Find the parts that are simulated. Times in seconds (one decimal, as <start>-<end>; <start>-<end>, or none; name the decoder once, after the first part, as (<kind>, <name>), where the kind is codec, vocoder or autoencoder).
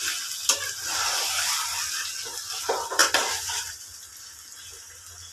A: none